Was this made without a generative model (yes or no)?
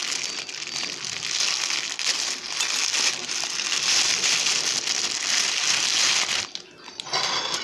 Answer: yes